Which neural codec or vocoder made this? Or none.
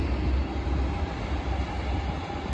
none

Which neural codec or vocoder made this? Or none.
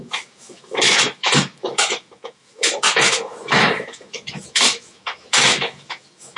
autoencoder, DAC-VAE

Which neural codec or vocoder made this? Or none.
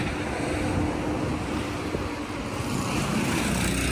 none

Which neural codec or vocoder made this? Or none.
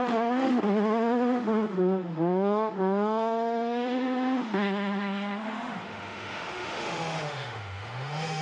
autoencoder, DAC-VAE